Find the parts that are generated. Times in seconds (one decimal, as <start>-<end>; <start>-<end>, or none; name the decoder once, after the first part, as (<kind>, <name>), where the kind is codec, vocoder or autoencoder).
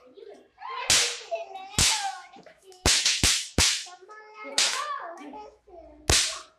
1.8-5.6 (autoencoder, DAC-VAE)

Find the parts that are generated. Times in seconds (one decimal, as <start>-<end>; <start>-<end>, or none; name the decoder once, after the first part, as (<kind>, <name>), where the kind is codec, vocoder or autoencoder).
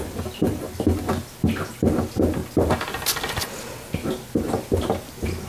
none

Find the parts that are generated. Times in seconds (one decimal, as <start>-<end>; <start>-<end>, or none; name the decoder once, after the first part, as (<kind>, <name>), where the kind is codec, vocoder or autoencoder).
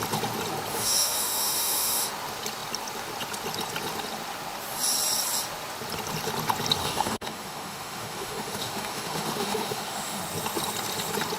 0.7-2.1 (autoencoder, DAC-VAE); 6.8-10.2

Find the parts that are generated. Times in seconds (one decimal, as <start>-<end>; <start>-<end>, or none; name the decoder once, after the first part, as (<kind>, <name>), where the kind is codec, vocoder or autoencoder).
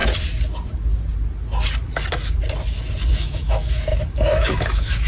3.1-5.1 (autoencoder, DAC-VAE)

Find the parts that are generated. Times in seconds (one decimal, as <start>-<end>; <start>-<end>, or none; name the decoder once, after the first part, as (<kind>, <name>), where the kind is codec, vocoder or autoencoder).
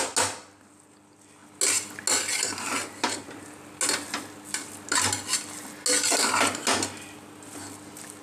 none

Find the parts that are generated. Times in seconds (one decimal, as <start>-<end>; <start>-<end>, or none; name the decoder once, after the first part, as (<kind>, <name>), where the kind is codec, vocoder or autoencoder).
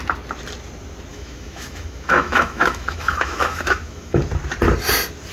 1.1-4.2 (autoencoder, DAC-VAE)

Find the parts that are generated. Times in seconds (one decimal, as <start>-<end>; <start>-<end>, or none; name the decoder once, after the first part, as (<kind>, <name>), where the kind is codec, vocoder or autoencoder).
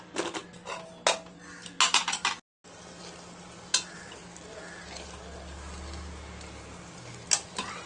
none